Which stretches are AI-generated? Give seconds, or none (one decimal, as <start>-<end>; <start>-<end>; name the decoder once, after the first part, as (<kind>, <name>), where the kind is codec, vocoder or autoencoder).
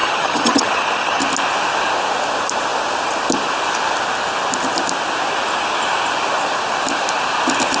0.0-1.2 (vocoder, HiFi-GAN)